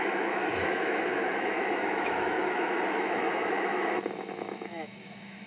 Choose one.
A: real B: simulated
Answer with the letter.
B